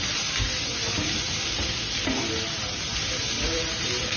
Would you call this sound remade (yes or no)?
no